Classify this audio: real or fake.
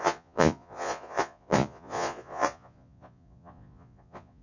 fake